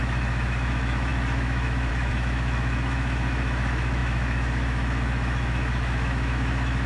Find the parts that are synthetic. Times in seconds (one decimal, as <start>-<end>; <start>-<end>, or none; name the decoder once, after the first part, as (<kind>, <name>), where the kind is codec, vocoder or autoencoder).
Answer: 0.0-6.9 (autoencoder, DAC-VAE)